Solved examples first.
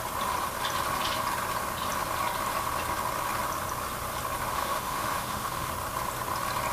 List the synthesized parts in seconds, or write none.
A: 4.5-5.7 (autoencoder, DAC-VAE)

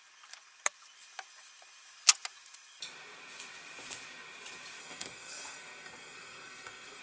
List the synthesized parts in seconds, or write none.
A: 4.8-7.0 (codec, SNAC)

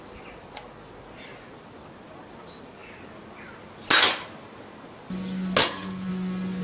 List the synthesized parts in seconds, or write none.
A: 5.6-6.1 (vocoder, Vocos)